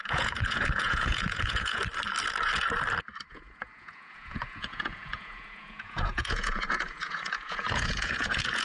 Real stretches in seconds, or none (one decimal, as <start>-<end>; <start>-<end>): 1.8-3.3